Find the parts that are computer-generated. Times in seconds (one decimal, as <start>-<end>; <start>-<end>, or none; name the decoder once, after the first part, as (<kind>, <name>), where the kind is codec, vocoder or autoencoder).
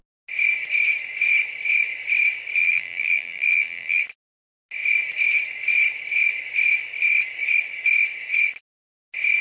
2.6-4.0 (vocoder, BigVGAN v2)